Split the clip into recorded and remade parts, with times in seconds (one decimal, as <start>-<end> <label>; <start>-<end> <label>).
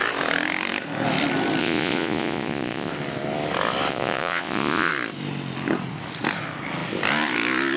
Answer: 0.0-1.6 recorded; 1.6-2.9 remade; 2.9-3.9 recorded; 3.9-4.9 remade; 4.9-7.8 recorded